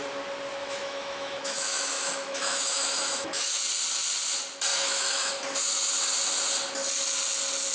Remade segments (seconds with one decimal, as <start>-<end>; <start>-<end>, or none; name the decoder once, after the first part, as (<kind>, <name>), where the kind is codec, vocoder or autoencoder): 0.6-3.6 (autoencoder, DAC-VAE); 4.7-5.3

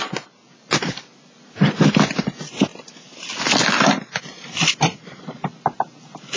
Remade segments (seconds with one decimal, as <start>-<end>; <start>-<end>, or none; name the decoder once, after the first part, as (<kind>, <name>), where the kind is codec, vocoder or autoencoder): 2.7-5.2 (vocoder, BigVGAN v2)

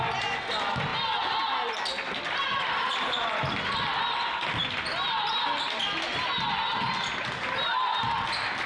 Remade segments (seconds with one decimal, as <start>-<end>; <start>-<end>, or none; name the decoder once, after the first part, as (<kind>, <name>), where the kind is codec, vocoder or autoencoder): none